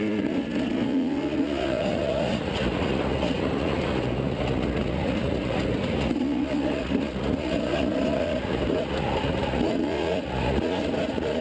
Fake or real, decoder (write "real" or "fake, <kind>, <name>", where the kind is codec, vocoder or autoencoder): fake, vocoder, Vocos